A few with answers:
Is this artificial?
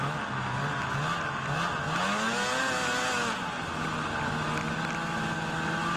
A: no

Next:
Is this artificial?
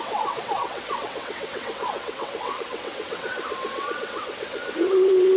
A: yes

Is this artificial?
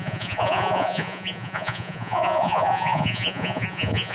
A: yes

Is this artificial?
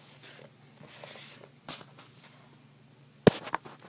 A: no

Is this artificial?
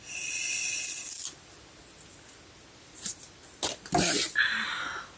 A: no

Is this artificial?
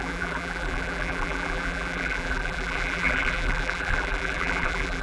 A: yes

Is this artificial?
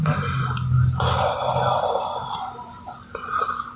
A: no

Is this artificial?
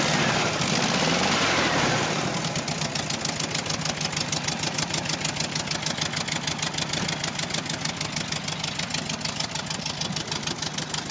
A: no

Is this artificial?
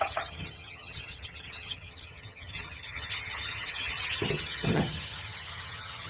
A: yes